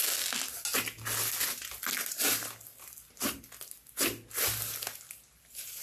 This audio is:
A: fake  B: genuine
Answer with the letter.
B